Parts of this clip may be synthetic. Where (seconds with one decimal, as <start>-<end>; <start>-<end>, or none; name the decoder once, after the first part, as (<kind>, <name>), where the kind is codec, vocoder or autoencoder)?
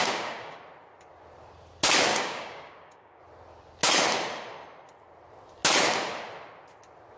0.0-0.6 (codec, DAC); 2.1-3.2